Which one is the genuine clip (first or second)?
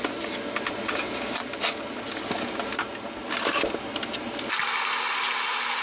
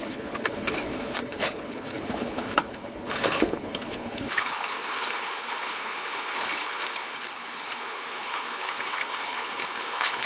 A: first